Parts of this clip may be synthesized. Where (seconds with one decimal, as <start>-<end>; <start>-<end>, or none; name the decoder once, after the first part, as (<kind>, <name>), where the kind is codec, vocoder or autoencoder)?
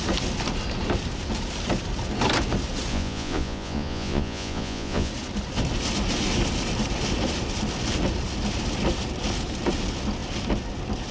2.9-5.1 (vocoder, Vocos)